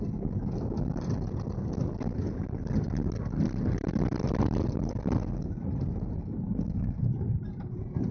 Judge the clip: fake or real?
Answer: real